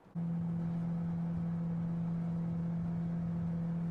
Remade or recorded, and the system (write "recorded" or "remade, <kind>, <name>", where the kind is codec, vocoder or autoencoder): recorded